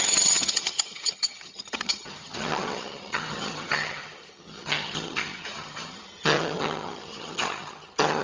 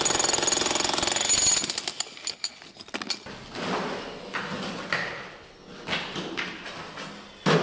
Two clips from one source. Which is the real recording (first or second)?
second